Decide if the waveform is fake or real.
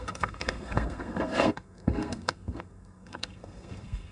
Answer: fake